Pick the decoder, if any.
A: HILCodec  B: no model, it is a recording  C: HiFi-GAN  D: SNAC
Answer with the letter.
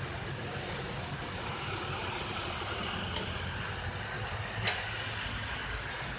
B